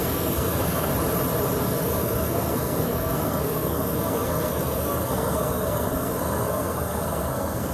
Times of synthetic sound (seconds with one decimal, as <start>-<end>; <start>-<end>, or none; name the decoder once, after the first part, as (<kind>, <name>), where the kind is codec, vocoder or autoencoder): 0.0-0.9 (codec, SNAC); 1.6-7.7